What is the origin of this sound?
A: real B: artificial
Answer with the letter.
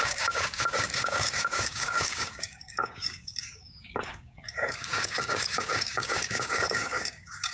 B